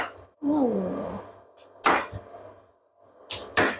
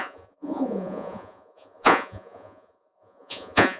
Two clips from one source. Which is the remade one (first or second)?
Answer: second